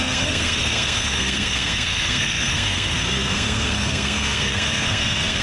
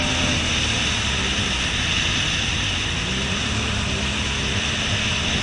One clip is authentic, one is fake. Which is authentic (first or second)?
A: second